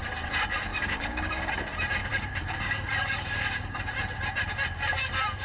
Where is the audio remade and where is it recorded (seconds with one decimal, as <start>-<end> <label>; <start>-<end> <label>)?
0.0-0.7 recorded; 0.7-1.5 remade; 1.5-2.0 recorded; 2.0-3.8 remade; 3.8-5.4 recorded